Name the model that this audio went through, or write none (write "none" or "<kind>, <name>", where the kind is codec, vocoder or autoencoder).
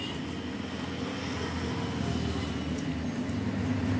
none